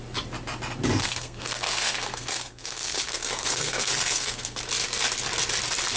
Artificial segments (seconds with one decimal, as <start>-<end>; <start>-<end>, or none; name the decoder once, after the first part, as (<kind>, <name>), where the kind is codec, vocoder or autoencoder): 1.0-4.6 (codec, SNAC)